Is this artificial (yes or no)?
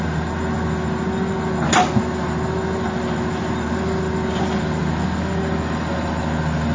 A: no